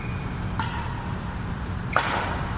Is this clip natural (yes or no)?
yes